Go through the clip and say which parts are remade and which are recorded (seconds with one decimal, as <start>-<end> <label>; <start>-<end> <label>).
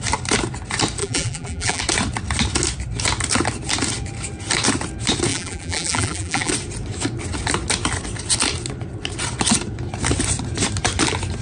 0.0-1.0 recorded; 1.0-1.8 remade; 1.8-5.3 recorded; 5.3-6.5 remade; 6.5-11.4 recorded